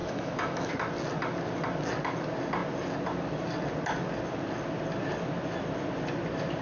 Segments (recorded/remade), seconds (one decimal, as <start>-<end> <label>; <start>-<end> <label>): 0.0-0.7 remade; 0.7-6.6 recorded